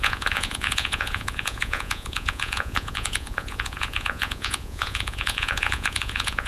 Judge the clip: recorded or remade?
remade